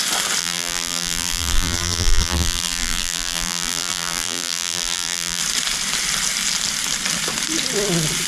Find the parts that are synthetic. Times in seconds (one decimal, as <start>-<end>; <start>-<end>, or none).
0.4-5.4